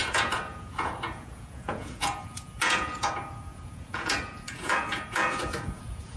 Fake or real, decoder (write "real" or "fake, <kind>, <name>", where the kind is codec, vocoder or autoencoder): fake, vocoder, Vocos